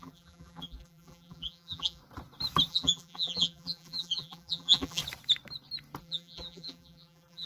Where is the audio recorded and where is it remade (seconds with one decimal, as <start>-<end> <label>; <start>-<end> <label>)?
0.0-2.0 remade; 2.0-2.7 recorded; 2.7-5.0 remade; 5.0-6.0 recorded; 6.0-7.5 remade